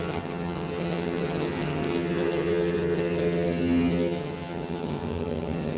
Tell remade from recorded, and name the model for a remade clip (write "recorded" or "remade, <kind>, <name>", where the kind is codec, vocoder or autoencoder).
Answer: remade, vocoder, HiFi-GAN